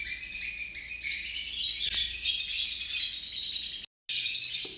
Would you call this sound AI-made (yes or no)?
no